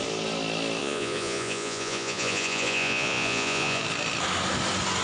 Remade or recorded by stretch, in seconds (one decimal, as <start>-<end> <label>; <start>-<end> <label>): 0.0-0.8 recorded; 0.8-3.8 remade; 3.8-5.0 recorded